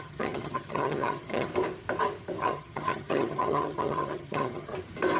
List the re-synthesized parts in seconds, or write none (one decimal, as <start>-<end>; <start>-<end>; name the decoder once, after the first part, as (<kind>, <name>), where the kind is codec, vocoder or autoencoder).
0.0-1.5 (vocoder, HiFi-GAN); 2.4-4.7